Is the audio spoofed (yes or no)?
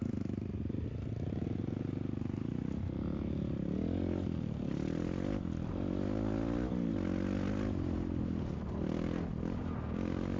no